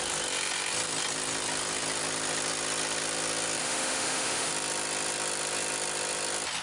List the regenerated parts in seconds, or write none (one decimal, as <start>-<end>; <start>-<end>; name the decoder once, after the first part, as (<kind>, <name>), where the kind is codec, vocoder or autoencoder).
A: 3.6-4.5 (autoencoder, DAC-VAE)